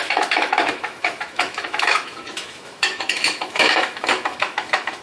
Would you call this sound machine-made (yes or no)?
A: yes